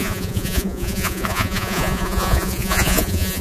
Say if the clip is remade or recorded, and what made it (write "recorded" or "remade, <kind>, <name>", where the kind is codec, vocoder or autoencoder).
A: remade, vocoder, Vocos